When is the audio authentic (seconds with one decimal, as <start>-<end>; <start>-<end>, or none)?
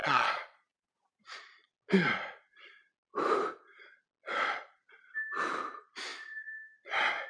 1.7-7.3